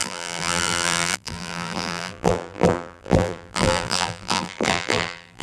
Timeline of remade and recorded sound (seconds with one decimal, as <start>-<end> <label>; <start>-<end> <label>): 0.0-5.4 remade

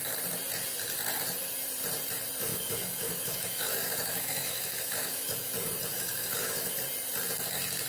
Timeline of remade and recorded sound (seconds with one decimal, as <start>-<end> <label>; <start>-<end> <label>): 0.0-2.5 recorded; 2.5-5.5 remade; 5.5-5.9 recorded; 5.9-6.8 remade; 6.8-7.9 recorded

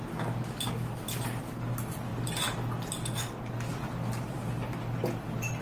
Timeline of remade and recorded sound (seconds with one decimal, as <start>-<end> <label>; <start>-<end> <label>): 0.0-5.6 remade